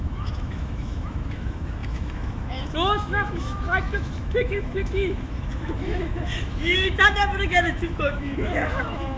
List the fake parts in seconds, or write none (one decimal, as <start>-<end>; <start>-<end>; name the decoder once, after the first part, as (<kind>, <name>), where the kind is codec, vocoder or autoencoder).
0.0-9.2 (autoencoder, DAC-VAE)